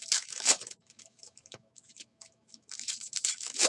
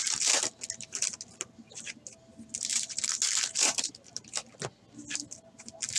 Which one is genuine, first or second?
second